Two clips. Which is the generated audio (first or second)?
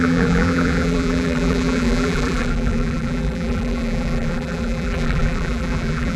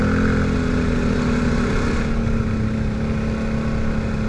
first